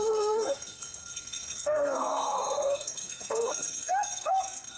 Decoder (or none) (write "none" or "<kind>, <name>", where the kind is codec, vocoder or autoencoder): codec, SNAC